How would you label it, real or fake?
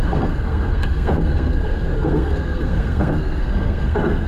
fake